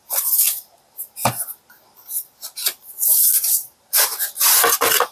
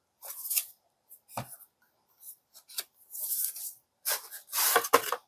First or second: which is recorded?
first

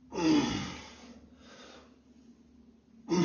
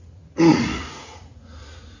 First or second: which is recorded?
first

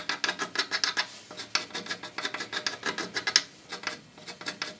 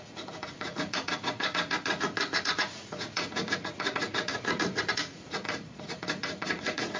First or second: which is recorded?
first